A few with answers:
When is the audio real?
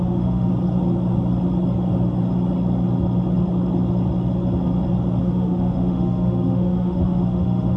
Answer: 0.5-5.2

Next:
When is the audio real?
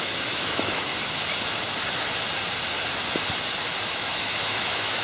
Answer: 0.9-3.9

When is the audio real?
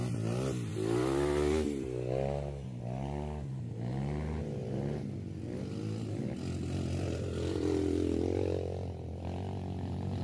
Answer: 0.0-10.2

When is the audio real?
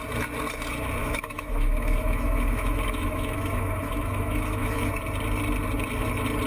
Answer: 0.0-1.0; 4.9-6.5